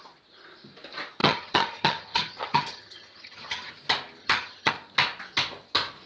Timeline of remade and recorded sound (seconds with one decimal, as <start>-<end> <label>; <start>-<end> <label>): 0.0-1.2 recorded; 1.2-3.7 remade; 3.7-4.2 recorded; 4.2-4.7 remade; 4.7-6.1 recorded